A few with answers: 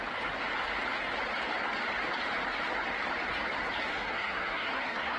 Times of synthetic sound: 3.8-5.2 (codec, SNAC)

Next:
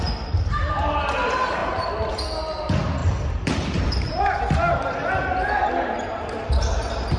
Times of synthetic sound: 1.6-2.1 (vocoder, BigVGAN v2); 3.0-4.2

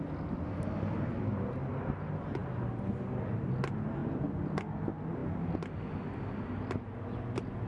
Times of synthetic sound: 4.0-4.5 (vocoder, BigVGAN v2)

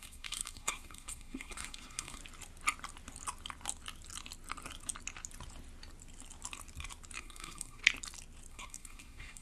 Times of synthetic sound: 0.0-2.2 (codec, SNAC); 7.2-7.8; 8.5-9.4

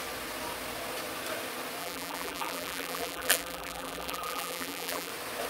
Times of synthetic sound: 1.8-5.1 (vocoder, BigVGAN v2)

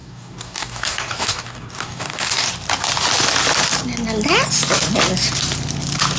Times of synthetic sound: 0.0-2.5 (codec, DAC)

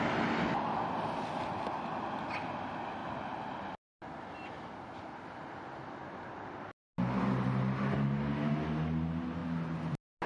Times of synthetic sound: none